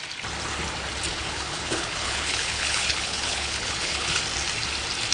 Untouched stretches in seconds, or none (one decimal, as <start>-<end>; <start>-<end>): 0.0-1.1; 4.2-5.1